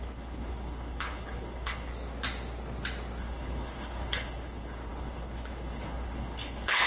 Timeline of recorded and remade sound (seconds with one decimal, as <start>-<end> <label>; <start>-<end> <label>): 0.0-1.9 remade; 1.9-3.2 recorded; 3.2-6.9 remade